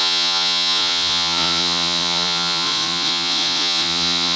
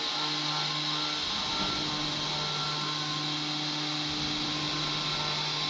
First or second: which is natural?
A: second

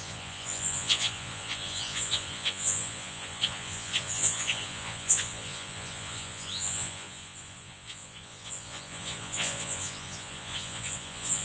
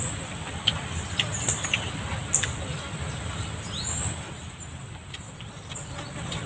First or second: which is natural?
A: second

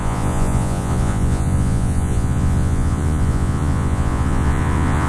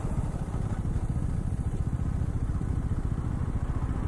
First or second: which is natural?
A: second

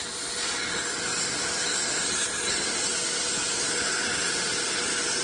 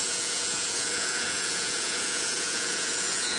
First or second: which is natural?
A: first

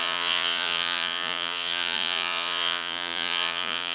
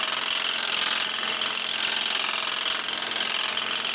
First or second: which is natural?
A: second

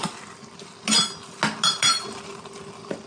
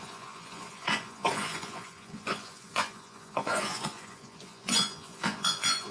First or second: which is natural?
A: first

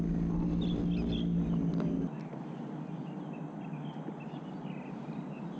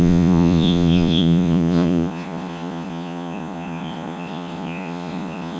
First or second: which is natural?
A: first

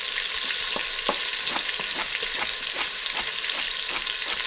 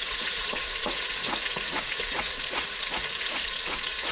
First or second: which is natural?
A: first